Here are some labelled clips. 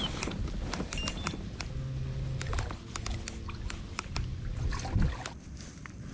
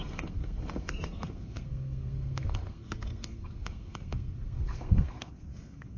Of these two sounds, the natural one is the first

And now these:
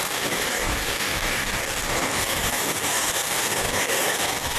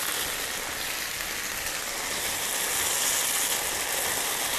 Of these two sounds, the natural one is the second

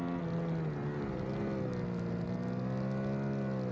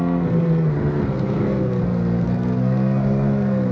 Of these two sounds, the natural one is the first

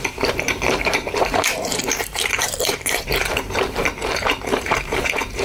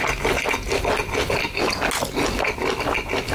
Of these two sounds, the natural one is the second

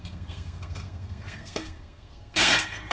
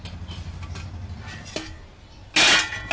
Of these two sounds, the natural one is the second